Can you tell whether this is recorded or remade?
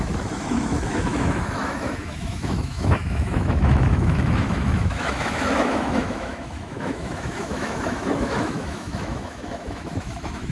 remade